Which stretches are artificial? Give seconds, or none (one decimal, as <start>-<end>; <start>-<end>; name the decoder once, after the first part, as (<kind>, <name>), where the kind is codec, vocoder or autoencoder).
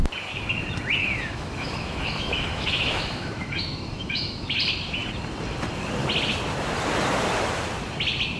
1.0-4.6 (autoencoder, DAC-VAE)